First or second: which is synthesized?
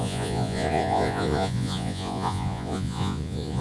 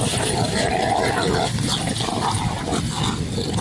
first